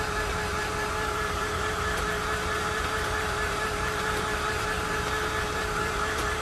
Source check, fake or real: fake